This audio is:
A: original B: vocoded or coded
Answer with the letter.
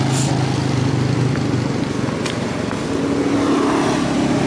A